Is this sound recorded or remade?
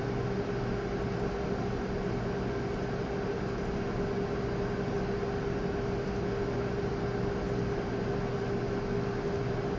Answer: recorded